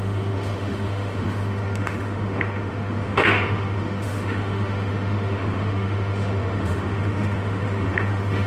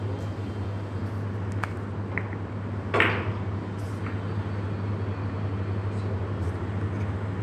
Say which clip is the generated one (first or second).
first